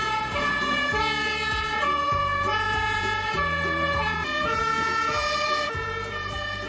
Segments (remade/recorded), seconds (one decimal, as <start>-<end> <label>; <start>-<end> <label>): 0.0-6.7 remade